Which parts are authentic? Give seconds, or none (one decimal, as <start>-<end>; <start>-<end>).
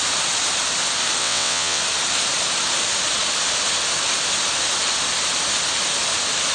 0.0-1.2; 1.8-6.5